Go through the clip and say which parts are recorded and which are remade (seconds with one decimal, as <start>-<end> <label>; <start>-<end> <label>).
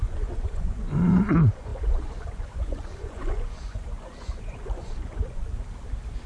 0.0-5.4 remade; 5.4-6.3 recorded